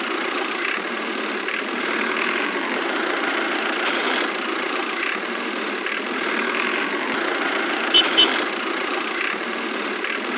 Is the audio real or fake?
fake